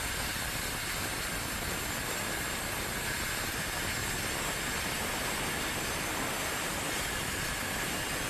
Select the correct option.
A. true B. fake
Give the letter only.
A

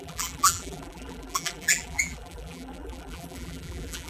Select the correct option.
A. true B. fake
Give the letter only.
B